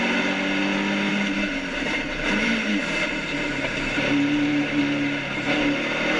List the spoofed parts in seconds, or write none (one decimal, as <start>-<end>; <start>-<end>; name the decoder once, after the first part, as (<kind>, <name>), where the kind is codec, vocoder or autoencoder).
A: 1.1-4.8 (vocoder, BigVGAN v2)